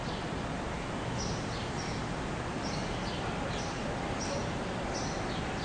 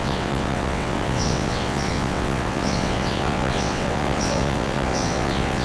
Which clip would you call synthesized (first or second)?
second